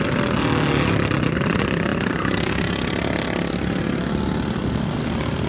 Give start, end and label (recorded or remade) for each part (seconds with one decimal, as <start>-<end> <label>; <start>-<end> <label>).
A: 0.0-5.5 recorded